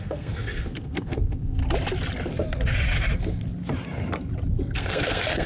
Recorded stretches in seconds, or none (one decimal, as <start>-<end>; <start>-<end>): 1.6-4.6